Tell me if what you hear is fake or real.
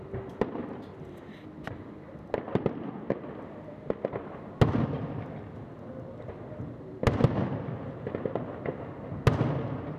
real